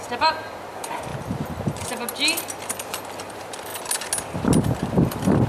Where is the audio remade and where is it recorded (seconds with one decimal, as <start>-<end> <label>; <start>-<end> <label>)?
0.0-1.1 remade; 1.1-2.4 recorded; 2.4-3.7 remade; 3.7-4.9 recorded; 4.9-5.5 remade

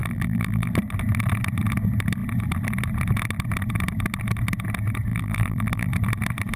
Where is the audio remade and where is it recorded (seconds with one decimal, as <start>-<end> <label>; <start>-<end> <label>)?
0.0-0.7 remade; 0.7-5.1 recorded; 5.1-5.9 remade; 5.9-6.6 recorded

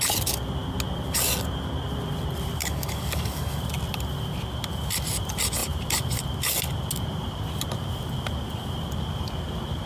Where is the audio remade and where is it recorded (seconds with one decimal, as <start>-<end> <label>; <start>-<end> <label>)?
0.0-2.6 recorded; 2.6-3.6 remade; 3.6-9.9 recorded

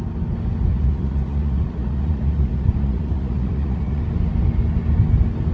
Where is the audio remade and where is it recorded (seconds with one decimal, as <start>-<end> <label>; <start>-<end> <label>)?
0.0-0.7 recorded; 0.7-4.0 remade; 4.0-5.5 recorded